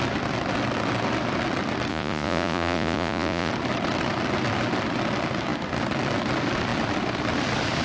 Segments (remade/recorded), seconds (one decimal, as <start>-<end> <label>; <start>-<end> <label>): 0.0-1.9 recorded; 1.9-3.5 remade; 3.5-7.8 recorded